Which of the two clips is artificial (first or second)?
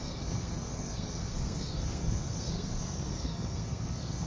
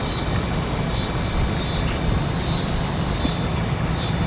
first